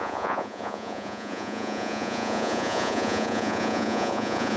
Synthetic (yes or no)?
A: yes